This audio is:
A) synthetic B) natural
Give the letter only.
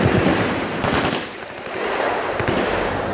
A